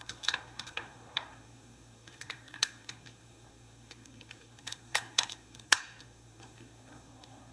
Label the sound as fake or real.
fake